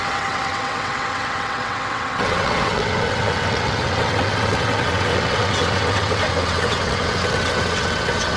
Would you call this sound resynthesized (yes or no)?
yes